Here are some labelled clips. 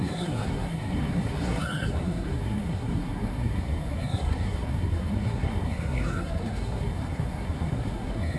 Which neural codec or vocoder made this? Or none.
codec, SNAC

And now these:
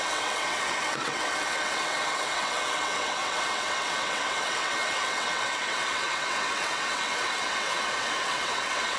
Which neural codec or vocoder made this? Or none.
vocoder, WaveNeXt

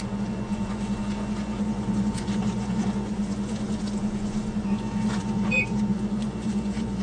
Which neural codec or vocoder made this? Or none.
vocoder, Vocos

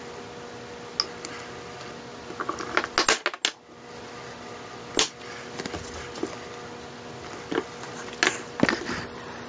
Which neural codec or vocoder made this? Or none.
none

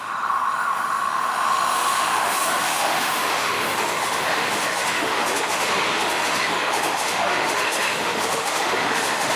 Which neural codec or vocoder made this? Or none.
autoencoder, DAC-VAE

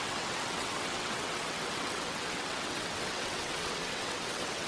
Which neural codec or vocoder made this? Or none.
vocoder, WaveNeXt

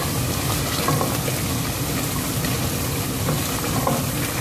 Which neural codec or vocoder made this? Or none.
none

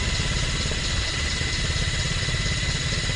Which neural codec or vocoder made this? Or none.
none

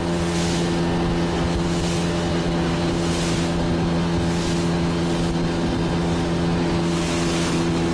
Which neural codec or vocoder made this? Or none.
none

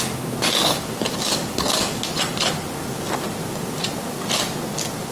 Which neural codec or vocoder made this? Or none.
none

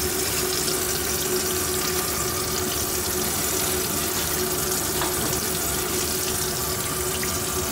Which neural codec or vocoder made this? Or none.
none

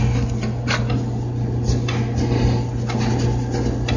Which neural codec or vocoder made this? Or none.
none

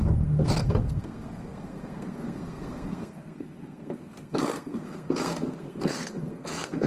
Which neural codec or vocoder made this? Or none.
codec, SNAC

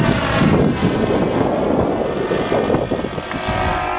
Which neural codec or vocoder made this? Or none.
none